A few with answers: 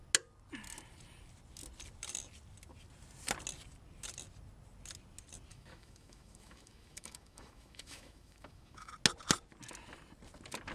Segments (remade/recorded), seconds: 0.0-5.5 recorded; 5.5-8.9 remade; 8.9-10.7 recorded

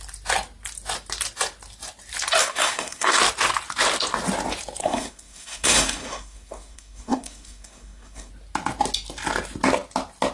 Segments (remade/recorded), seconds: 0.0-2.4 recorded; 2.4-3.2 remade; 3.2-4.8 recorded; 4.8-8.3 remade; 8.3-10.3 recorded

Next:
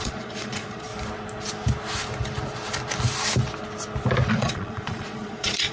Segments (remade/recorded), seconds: 0.0-0.9 remade; 0.9-4.3 recorded; 4.3-5.7 remade

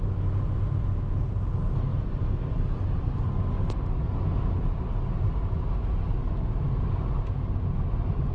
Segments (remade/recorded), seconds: 0.0-8.3 recorded

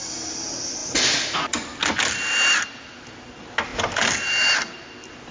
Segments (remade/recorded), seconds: 0.0-5.3 recorded

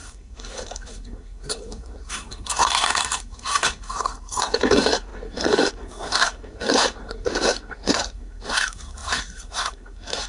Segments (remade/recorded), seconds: 0.0-10.3 remade